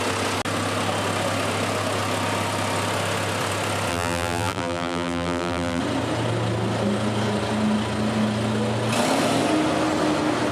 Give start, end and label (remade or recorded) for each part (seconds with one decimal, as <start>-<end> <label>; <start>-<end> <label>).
0.0-3.9 recorded; 3.9-5.8 remade; 5.8-10.5 recorded